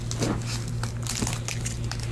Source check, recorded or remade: recorded